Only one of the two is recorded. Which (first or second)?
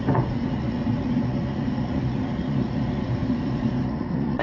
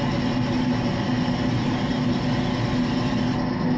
second